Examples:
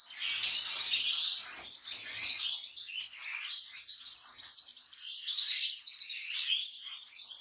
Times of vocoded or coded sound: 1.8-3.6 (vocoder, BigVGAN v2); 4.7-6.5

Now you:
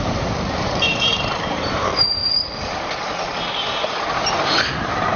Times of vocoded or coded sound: 0.0-2.2 (vocoder, BigVGAN v2); 3.9-5.2

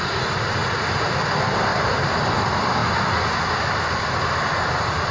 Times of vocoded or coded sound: 1.7-2.3 (vocoder, BigVGAN v2)